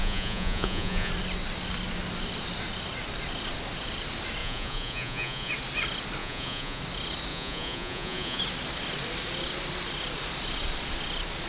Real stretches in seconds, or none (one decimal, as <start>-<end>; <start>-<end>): 1.1-4.4; 5.5-6.2; 6.8-7.3; 8.4-11.5